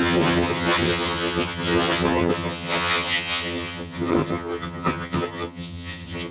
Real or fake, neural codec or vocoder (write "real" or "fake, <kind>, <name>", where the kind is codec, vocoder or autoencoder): fake, vocoder, HiFi-GAN